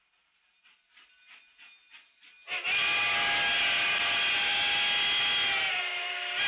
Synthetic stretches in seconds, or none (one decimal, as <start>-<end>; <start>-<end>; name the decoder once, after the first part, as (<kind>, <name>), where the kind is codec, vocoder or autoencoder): none